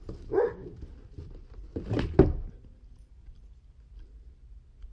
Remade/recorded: recorded